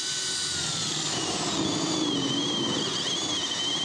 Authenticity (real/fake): real